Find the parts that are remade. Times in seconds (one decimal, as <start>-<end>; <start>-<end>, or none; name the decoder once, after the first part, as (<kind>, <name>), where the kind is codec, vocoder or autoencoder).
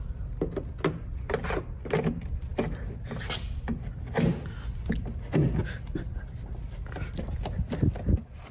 none